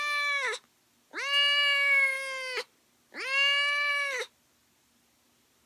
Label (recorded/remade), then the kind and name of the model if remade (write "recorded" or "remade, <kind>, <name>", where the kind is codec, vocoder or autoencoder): recorded